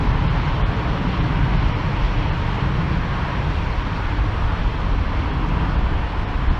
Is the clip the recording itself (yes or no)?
yes